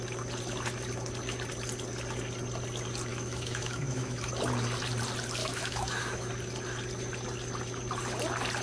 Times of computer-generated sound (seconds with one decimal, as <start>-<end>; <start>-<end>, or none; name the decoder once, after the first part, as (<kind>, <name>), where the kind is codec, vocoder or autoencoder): 3.1-4.3 (autoencoder, DAC-VAE); 5.4-6.3